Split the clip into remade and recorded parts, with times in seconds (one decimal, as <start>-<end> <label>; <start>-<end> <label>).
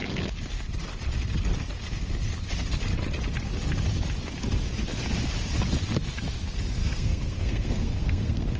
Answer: 0.0-6.8 recorded; 6.8-8.6 remade